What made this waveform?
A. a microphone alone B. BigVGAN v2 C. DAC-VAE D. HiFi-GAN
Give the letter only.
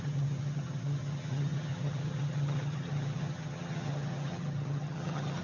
D